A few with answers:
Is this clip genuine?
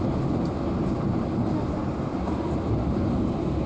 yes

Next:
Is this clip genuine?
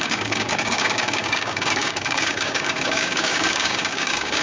no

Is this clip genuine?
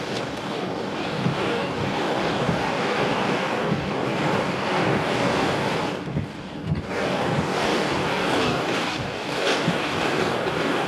no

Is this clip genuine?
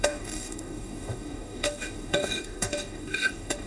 no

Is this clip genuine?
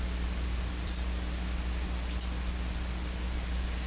yes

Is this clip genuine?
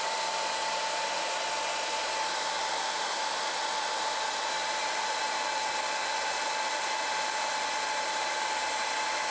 yes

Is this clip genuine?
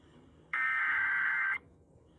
no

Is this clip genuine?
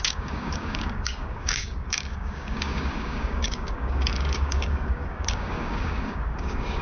no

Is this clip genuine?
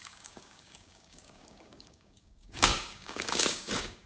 no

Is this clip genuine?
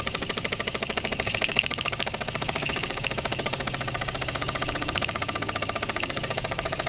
no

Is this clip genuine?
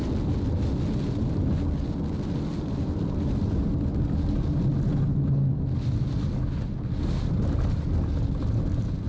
yes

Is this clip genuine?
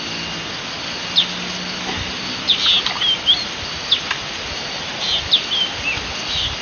yes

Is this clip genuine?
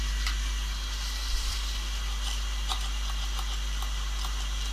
yes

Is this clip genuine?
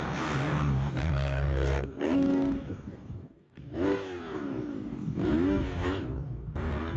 no